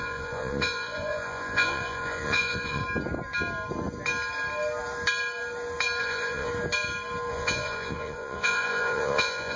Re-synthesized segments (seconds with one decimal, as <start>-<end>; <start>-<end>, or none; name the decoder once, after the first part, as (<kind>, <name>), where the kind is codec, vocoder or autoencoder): 0.0-2.8 (vocoder, Vocos); 6.0-6.5; 7.3-9.6